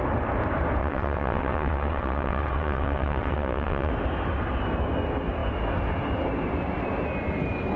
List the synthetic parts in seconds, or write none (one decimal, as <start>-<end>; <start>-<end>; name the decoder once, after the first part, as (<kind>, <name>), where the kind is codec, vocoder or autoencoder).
0.8-3.9 (vocoder, WaveNeXt)